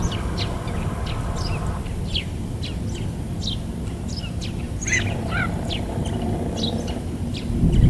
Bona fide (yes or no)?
yes